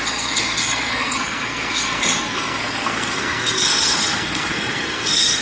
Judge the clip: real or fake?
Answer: fake